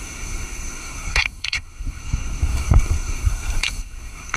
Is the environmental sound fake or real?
fake